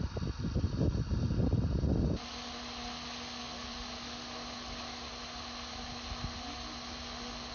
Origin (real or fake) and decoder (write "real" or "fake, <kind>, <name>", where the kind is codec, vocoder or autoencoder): real